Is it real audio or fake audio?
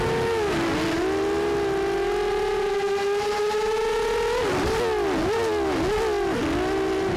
real